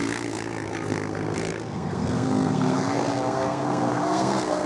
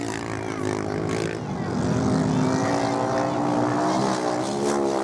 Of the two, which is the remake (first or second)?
first